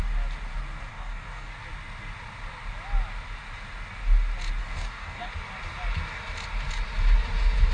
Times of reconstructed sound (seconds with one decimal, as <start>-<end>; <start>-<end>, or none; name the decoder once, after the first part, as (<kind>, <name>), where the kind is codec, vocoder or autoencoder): 0.9-1.5 (codec, DAC); 4.6-5.3